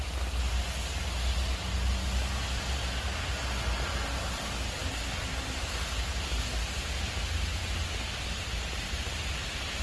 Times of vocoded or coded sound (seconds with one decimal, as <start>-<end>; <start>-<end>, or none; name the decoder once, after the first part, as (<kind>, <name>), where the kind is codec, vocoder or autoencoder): none